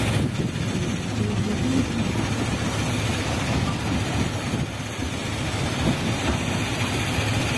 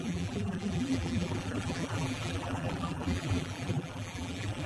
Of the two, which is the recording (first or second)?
first